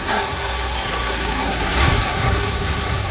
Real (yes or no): no